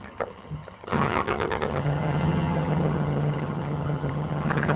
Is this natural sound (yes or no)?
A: no